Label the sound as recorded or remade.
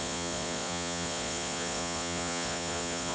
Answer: remade